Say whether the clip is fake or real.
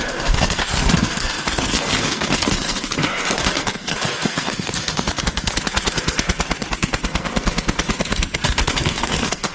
fake